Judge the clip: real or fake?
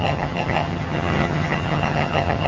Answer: fake